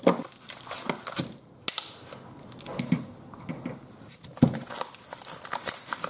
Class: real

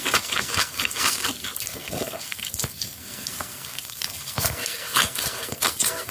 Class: fake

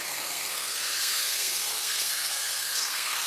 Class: fake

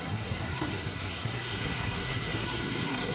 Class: fake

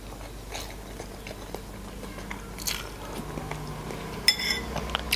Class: real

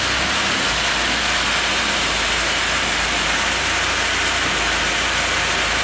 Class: real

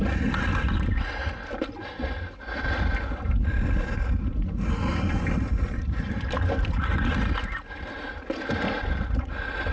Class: real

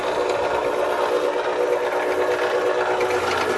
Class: real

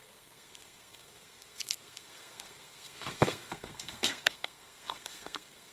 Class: fake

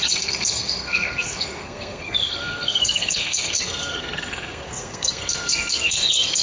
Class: fake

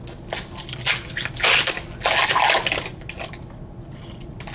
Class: real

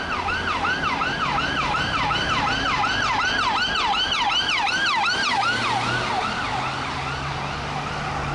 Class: real